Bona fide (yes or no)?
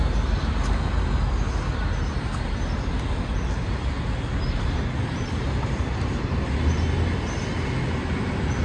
yes